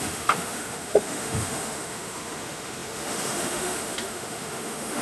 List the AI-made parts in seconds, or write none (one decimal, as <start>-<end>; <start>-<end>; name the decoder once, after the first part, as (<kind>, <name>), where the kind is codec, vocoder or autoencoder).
0.0-5.0 (autoencoder, DAC-VAE)